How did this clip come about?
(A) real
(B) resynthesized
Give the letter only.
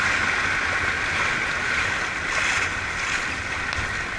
A